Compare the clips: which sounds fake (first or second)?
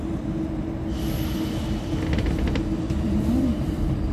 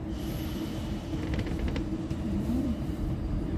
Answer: second